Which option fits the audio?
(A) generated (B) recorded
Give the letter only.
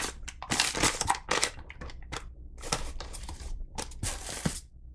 A